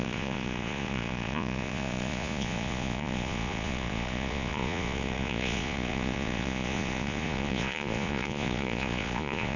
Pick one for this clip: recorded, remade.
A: remade